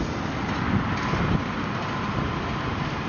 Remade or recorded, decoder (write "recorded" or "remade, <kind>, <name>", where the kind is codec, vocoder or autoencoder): recorded